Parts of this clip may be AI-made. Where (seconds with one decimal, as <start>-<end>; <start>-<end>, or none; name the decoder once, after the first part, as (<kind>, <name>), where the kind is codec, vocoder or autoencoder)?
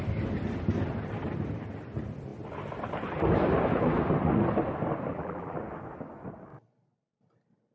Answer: 5.1-5.6 (vocoder, BigVGAN v2)